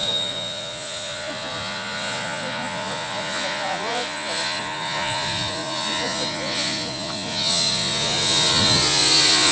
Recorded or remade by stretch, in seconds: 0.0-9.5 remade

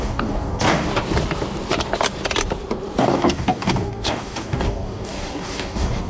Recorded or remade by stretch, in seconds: 0.0-0.9 remade; 0.9-3.0 recorded; 3.0-6.1 remade

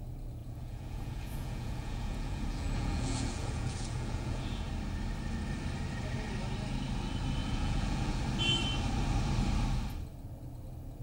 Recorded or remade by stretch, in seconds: 0.0-0.4 recorded; 0.4-4.7 remade; 4.7-7.4 recorded; 7.4-8.2 remade; 8.2-11.0 recorded